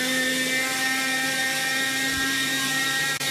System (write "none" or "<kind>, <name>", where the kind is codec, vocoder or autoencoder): vocoder, BigVGAN v2